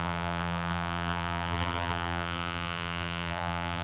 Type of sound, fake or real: fake